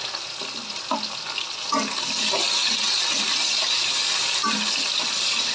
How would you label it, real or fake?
real